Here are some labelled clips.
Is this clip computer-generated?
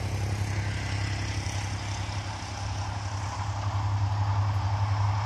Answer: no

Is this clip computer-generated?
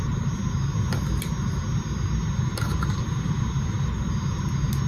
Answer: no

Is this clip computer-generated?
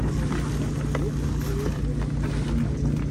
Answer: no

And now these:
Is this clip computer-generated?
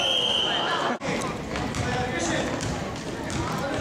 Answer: no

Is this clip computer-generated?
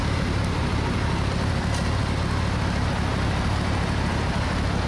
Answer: no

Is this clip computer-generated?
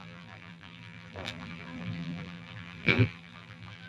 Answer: yes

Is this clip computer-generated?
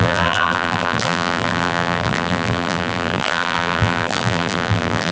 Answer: yes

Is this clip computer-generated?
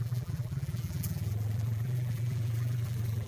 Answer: yes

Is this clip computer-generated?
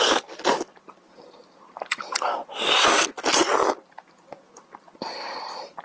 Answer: no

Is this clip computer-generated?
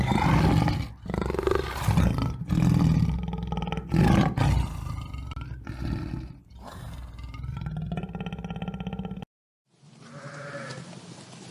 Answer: no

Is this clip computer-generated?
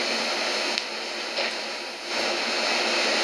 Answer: no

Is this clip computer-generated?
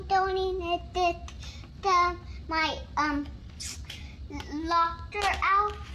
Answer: no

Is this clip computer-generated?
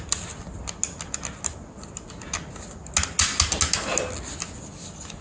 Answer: no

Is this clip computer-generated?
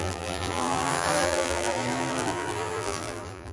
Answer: yes